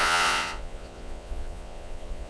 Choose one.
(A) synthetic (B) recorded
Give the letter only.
A